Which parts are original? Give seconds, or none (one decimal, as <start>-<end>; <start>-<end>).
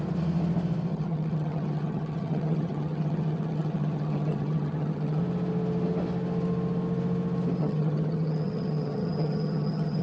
0.0-0.9; 5.2-7.6